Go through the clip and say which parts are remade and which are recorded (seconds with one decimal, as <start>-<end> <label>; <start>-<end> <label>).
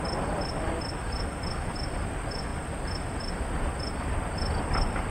0.0-5.1 recorded